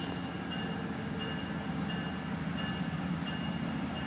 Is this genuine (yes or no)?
yes